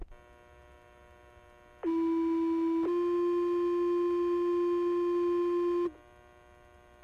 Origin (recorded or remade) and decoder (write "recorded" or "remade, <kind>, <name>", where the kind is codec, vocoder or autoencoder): recorded